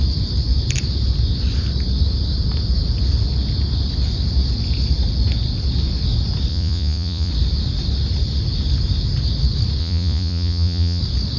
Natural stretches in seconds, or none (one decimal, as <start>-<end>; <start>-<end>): 0.0-6.5; 7.3-9.8; 11.0-11.4